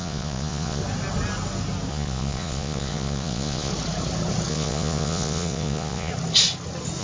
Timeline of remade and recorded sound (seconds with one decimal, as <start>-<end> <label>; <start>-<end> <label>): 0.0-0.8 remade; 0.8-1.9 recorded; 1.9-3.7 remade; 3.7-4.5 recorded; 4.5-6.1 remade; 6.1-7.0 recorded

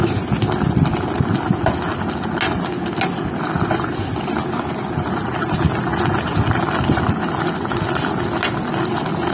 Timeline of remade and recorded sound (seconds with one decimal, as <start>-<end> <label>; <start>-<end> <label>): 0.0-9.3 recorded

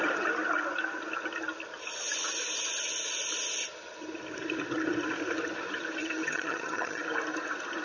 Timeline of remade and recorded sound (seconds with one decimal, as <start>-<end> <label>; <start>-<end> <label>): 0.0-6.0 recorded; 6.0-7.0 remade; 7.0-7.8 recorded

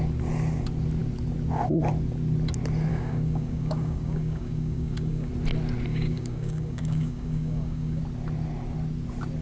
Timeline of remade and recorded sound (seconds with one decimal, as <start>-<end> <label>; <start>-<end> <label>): 0.0-2.9 recorded; 2.9-5.3 remade; 5.3-5.9 recorded; 5.9-8.0 remade; 8.0-9.4 recorded